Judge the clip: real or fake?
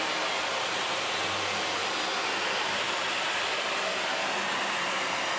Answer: real